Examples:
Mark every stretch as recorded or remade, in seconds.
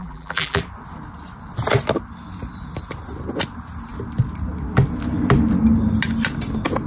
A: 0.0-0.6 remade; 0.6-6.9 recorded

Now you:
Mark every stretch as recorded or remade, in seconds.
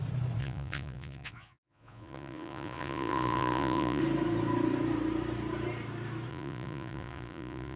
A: 0.0-0.4 recorded; 0.4-4.0 remade; 4.0-6.3 recorded; 6.3-7.8 remade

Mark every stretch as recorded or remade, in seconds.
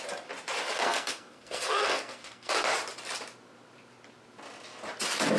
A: 0.0-0.8 recorded; 0.8-2.5 remade; 2.5-5.4 recorded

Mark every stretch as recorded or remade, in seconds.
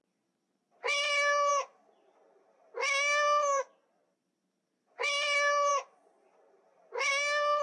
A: 0.0-7.6 recorded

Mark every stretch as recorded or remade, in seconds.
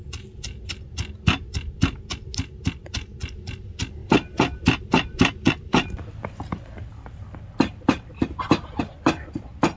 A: 0.0-4.0 recorded; 4.0-8.8 remade; 8.8-9.8 recorded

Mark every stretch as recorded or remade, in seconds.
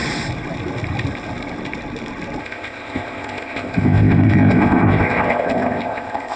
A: 0.0-2.4 recorded; 2.4-6.4 remade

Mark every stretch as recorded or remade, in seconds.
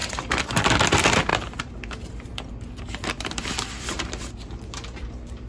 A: 0.0-0.6 remade; 0.6-1.3 recorded; 1.3-4.6 remade; 4.6-5.5 recorded